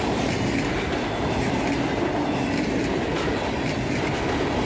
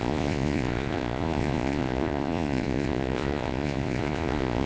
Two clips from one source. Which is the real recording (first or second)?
first